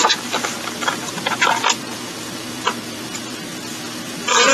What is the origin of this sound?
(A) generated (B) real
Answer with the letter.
A